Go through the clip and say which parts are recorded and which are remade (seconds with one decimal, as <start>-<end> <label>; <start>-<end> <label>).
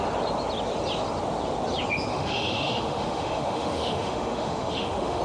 0.0-2.1 recorded; 2.1-5.2 remade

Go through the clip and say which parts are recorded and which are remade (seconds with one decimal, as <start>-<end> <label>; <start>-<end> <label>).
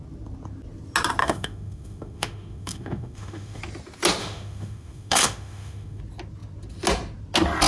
0.0-1.2 recorded; 1.2-3.6 remade; 3.6-4.2 recorded; 4.2-6.0 remade; 6.0-7.7 recorded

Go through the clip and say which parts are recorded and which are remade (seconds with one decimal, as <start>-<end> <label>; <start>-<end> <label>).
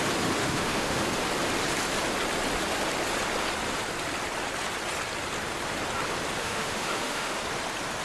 0.0-0.4 recorded; 0.4-1.0 remade; 1.0-6.4 recorded; 6.4-7.4 remade; 7.4-8.0 recorded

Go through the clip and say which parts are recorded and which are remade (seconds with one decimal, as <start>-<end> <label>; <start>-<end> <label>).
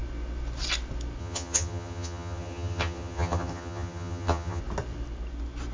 0.0-1.2 recorded; 1.2-4.6 remade; 4.6-5.7 recorded